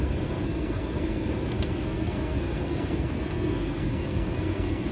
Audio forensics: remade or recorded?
remade